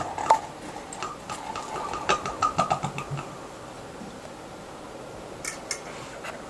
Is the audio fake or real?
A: real